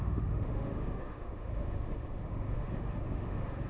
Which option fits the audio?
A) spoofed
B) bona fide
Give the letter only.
A